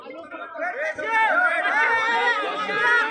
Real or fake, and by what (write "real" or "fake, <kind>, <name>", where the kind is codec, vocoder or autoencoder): real